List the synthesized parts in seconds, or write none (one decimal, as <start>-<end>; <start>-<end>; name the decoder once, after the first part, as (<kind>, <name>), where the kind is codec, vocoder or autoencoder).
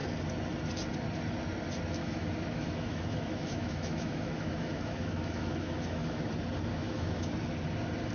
2.0-6.3 (autoencoder, DAC-VAE); 6.7-7.3